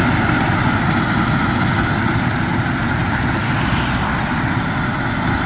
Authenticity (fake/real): real